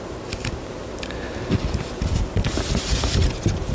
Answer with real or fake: real